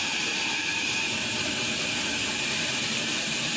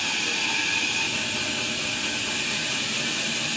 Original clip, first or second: second